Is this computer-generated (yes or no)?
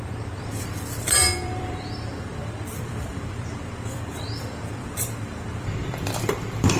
yes